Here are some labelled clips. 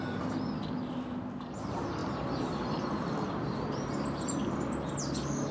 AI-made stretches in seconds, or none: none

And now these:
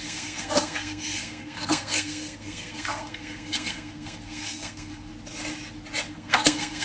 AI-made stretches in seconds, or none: 0.0-5.1 (codec, SNAC); 6.1-6.8

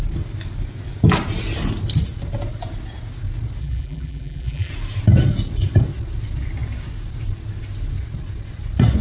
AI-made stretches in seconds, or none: 3.6-4.7 (vocoder, BigVGAN v2)

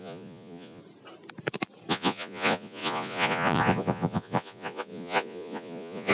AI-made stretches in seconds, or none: 0.0-0.8 (vocoder, Vocos); 1.9-6.1